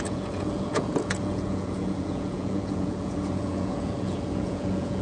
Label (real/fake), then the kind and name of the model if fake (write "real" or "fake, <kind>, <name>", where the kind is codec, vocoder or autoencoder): fake, vocoder, Vocos